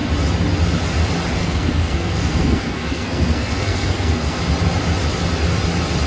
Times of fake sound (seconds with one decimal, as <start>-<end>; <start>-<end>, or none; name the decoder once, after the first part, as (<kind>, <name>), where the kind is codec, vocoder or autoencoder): 1.4-4.4 (codec, SNAC)